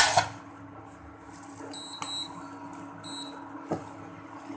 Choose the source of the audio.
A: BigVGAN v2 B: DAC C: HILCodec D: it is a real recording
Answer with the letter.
D